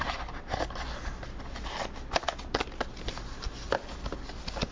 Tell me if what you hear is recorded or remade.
recorded